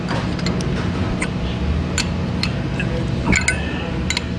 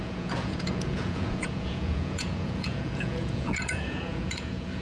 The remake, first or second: second